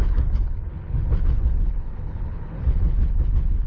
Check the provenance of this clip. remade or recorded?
remade